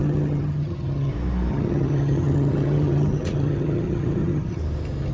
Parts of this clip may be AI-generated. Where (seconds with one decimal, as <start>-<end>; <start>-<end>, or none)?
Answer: 0.0-1.1; 1.5-4.6